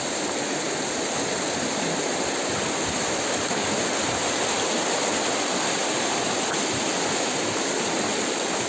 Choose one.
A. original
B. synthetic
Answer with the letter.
A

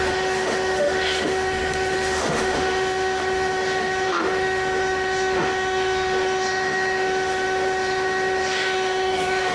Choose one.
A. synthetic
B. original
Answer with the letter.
A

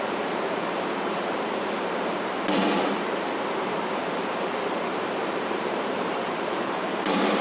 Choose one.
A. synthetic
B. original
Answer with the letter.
A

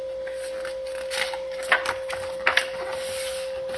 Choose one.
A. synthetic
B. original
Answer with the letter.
B